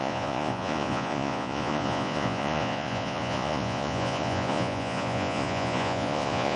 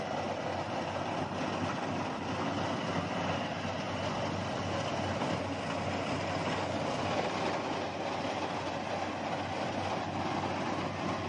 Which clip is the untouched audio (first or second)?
second